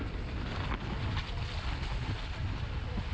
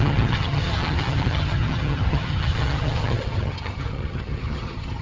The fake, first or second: second